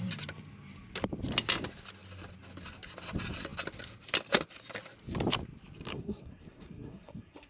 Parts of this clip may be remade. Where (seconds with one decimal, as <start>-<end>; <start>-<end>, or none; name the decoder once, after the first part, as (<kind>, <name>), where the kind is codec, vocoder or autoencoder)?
5.9-7.5 (codec, SNAC)